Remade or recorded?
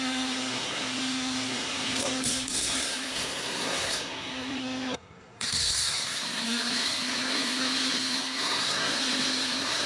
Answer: remade